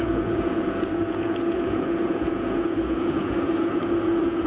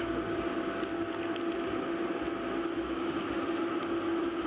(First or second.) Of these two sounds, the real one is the second